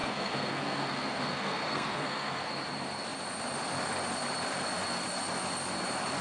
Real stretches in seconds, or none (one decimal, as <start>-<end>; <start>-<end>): 2.5-6.2